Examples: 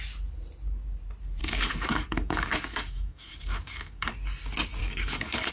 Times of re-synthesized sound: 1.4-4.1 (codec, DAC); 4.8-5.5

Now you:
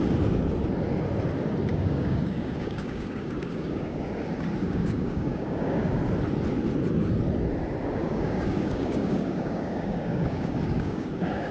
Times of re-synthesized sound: 1.7-4.0 (codec, DAC); 4.6-6.0; 7.8-11.5

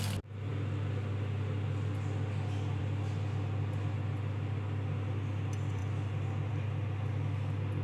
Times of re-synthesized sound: none

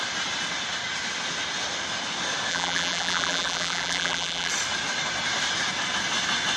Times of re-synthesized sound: 2.5-4.5 (vocoder, BigVGAN v2)

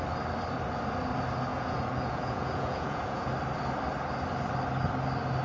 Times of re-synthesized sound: 1.5-3.3 (vocoder, Vocos)

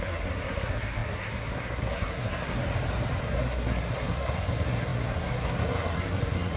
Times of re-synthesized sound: 0.0-2.6 (codec, SNAC); 3.2-6.6

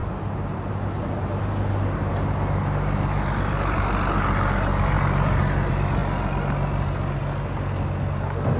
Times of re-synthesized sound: none

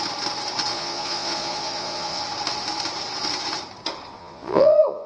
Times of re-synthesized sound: 0.7-2.2 (vocoder, Vocos); 4.2-5.1